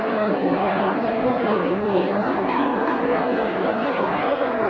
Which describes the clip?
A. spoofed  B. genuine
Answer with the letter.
A